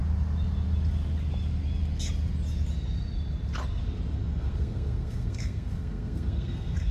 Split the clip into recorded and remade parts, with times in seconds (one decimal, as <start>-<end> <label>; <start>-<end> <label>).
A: 0.0-4.1 recorded; 4.1-6.9 remade